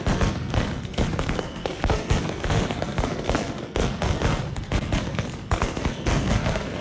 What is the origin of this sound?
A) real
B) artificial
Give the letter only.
B